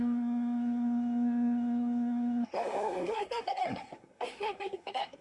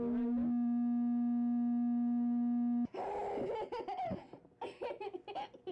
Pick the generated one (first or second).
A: first